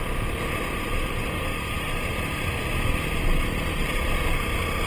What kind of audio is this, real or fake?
real